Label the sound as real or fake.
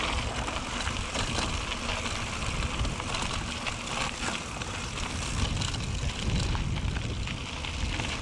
real